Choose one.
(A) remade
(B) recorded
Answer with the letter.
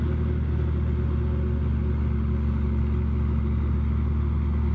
B